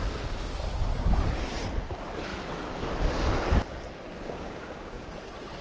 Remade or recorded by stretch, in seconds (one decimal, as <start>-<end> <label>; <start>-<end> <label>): 0.0-4.1 recorded; 4.1-5.1 remade; 5.1-5.6 recorded